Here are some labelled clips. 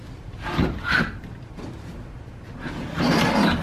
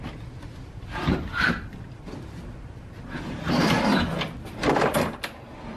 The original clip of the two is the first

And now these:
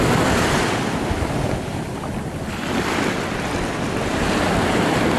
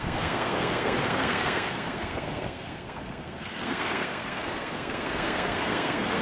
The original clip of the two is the first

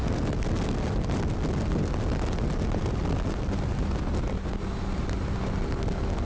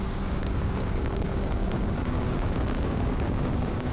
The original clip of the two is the first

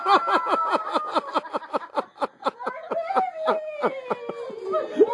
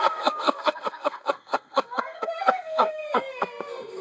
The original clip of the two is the first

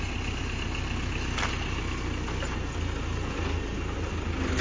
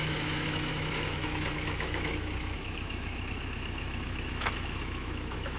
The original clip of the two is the first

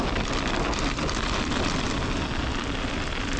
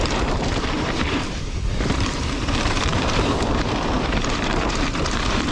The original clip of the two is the first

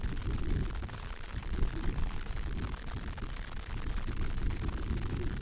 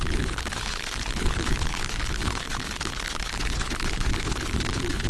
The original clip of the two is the first